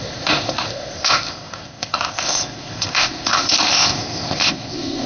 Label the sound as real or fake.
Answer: fake